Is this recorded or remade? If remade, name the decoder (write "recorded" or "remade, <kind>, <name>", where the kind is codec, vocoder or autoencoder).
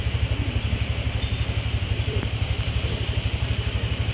recorded